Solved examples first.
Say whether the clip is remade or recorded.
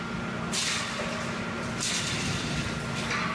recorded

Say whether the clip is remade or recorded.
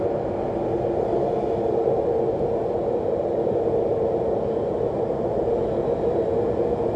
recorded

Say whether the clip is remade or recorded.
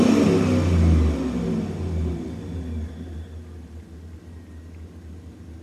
recorded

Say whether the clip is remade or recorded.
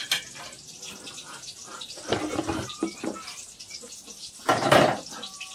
remade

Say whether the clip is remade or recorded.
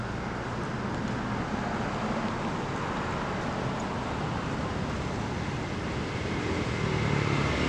recorded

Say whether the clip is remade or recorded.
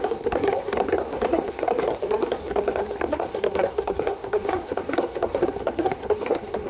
remade